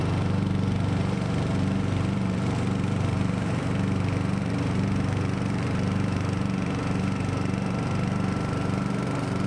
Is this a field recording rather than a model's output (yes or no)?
no